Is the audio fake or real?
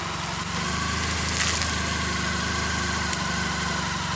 real